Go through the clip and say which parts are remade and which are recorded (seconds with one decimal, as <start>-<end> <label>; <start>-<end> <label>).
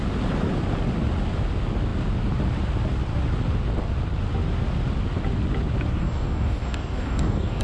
0.0-6.0 recorded; 6.0-7.6 remade